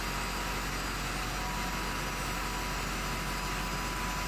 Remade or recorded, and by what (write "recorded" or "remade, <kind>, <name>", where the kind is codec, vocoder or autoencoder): recorded